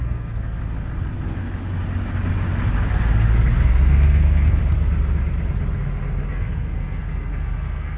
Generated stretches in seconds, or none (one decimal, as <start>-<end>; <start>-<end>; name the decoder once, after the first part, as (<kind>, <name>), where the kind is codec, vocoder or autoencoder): 0.0-0.6 (codec, SNAC); 3.7-4.6; 6.3-8.0